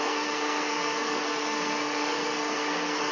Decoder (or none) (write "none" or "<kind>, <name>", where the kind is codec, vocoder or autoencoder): codec, SNAC